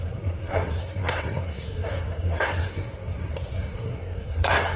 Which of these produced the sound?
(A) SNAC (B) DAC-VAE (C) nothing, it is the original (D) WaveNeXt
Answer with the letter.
A